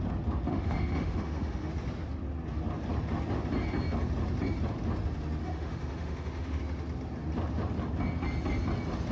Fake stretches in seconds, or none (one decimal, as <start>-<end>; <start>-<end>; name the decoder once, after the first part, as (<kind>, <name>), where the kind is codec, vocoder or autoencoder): 0.5-1.7 (autoencoder, DAC-VAE); 5.4-6.6